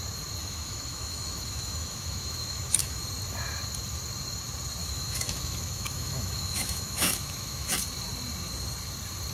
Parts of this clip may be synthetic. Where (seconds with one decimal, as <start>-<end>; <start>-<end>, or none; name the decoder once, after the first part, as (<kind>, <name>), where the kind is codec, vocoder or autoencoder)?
0.4-3.0 (autoencoder, DAC-VAE); 4.8-7.7